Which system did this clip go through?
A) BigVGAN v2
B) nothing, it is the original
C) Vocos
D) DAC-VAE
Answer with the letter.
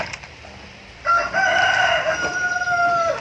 A